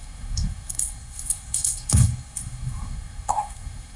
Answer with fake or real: fake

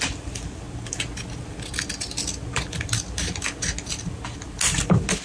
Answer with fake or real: real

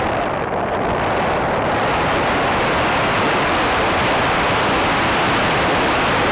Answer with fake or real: real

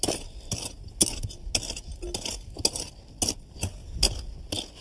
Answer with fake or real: real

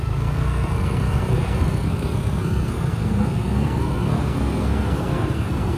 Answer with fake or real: fake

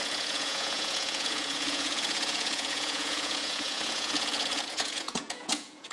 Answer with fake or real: fake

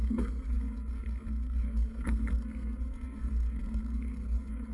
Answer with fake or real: fake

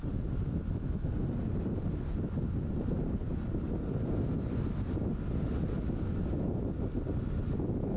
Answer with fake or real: real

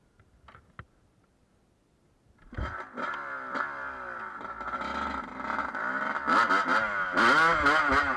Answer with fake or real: real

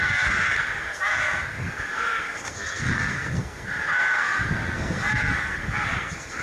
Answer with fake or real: fake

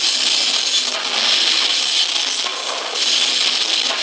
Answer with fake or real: real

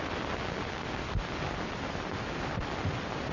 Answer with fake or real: real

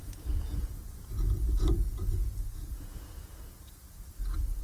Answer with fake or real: fake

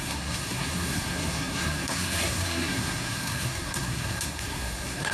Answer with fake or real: fake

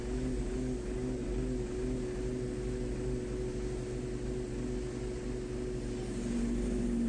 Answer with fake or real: real